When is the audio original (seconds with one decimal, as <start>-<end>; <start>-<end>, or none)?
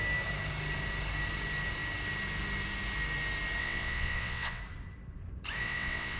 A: 0.0-3.6; 4.6-5.6